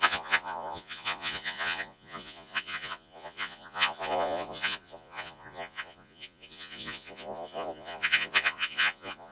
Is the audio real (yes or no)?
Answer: no